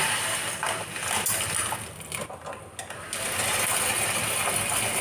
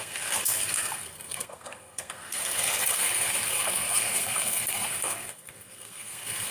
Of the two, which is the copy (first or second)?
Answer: second